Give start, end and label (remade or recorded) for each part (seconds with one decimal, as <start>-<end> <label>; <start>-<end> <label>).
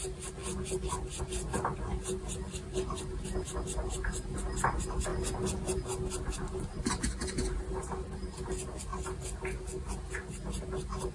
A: 0.0-11.1 recorded